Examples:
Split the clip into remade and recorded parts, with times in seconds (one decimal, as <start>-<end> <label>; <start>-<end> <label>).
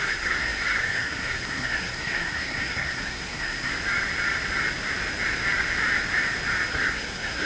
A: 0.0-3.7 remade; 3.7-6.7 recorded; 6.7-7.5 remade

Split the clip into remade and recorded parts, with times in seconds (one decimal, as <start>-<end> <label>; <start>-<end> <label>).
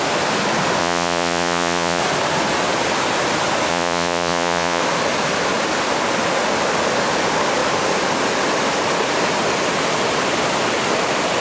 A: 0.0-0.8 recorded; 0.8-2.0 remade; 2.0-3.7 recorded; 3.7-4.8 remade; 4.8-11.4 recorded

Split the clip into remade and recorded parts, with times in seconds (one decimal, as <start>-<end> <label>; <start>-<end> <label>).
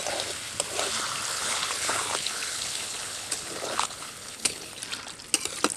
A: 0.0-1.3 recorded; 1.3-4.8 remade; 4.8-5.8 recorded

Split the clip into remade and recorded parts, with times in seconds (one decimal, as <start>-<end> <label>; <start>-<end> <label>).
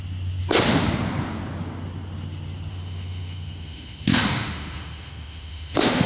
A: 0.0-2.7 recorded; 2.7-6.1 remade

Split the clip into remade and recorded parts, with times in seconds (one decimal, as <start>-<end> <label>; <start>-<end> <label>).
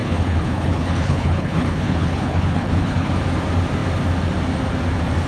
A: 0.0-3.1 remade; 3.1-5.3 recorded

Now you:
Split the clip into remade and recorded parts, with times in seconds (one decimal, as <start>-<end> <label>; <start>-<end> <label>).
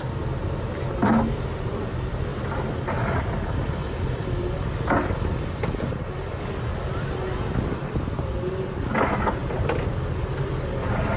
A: 0.0-9.4 recorded; 9.4-10.5 remade; 10.5-11.2 recorded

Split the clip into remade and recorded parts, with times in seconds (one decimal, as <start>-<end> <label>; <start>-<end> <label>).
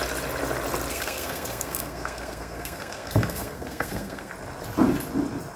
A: 0.0-0.9 recorded; 0.9-4.3 remade; 4.3-5.6 recorded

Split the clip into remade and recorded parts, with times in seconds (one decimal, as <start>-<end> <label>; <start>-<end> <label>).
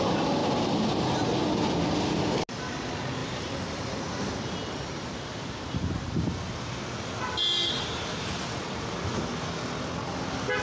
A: 0.0-0.4 recorded; 0.4-0.9 remade; 0.9-3.2 recorded; 3.2-6.2 remade; 6.2-10.6 recorded